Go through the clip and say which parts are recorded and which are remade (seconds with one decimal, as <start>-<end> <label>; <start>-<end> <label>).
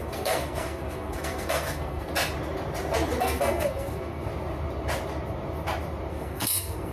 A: 0.0-2.1 remade; 2.1-3.2 recorded; 3.2-4.3 remade; 4.3-6.1 recorded; 6.1-6.9 remade